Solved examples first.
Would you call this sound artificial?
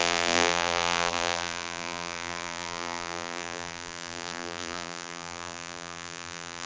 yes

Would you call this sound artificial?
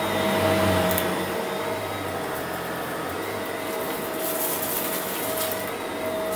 no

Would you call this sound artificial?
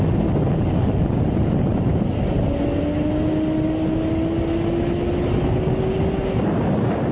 no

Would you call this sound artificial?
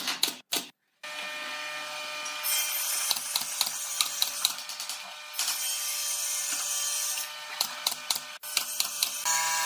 no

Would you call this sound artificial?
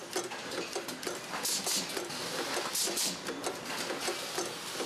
no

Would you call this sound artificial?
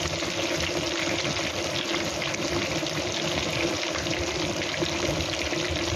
no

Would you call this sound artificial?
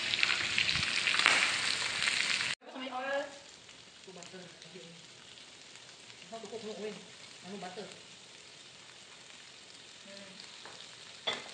no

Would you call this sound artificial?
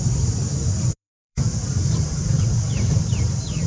yes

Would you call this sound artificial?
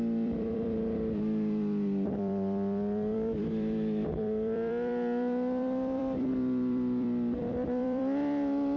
yes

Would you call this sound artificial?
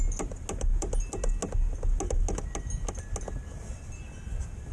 no